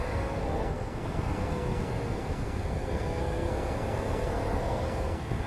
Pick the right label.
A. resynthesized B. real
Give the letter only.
A